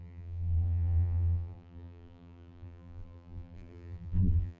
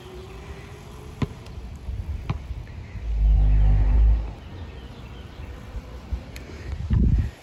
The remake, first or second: first